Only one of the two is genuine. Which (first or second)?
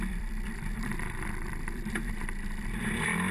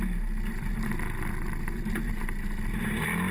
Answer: second